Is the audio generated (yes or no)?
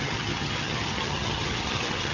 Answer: yes